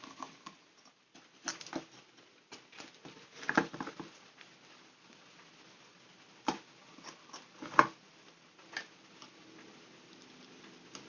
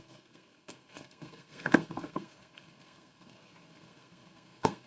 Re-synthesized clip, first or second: second